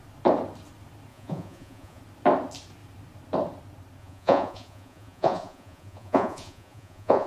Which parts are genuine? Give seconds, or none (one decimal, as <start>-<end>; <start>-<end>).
0.0-1.1; 2.0-4.0